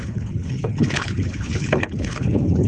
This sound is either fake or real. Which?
fake